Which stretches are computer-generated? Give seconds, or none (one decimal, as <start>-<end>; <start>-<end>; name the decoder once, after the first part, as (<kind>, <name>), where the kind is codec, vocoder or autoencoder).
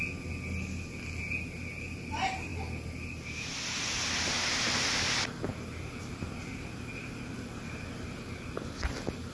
none